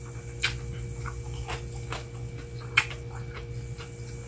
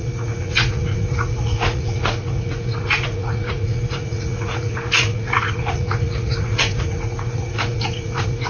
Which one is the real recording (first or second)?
first